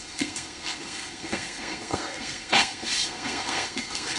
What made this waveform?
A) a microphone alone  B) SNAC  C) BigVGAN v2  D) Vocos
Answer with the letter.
B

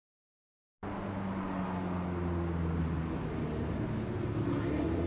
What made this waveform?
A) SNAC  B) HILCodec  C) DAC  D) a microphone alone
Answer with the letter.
D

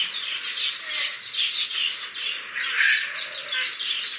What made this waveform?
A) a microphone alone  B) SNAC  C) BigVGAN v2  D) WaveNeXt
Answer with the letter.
A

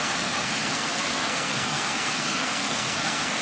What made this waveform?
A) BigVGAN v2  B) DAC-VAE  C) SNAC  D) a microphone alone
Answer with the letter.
C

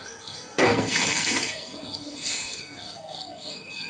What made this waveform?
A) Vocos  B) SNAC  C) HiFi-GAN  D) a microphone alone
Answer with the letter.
B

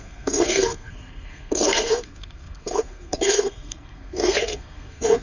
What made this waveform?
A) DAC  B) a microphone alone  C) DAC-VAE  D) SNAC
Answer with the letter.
D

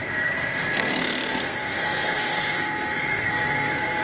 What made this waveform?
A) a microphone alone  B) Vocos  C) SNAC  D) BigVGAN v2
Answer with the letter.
C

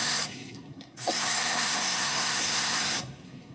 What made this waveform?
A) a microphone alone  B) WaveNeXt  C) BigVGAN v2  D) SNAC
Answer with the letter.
D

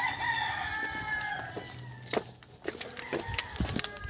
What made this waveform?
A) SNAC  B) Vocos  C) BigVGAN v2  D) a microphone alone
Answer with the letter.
D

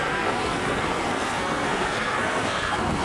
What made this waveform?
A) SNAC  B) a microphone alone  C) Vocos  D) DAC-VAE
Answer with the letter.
A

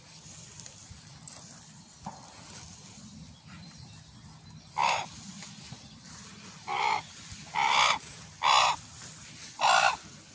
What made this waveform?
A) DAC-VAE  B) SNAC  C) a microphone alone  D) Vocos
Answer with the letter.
C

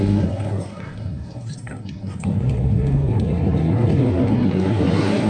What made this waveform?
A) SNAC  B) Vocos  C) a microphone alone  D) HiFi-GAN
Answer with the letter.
A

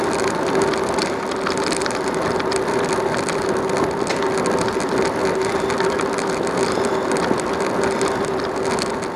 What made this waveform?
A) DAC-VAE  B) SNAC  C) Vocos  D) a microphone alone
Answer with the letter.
D